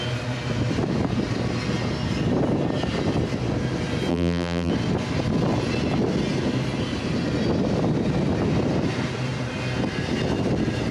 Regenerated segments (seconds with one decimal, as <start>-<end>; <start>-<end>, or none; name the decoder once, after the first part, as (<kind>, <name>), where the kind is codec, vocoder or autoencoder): 4.1-4.7 (vocoder, BigVGAN v2)